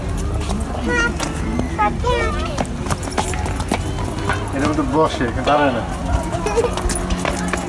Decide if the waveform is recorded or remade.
recorded